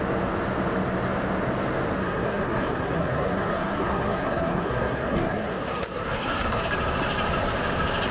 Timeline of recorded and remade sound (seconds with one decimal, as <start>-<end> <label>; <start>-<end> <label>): 0.0-2.0 recorded; 2.0-6.6 remade; 6.6-8.1 recorded